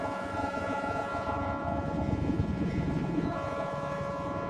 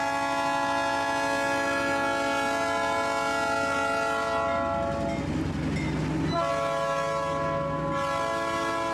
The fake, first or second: first